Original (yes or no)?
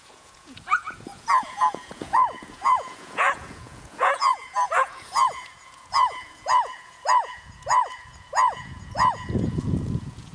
no